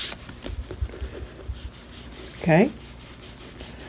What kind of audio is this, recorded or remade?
recorded